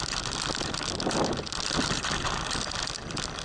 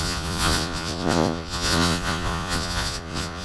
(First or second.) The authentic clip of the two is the first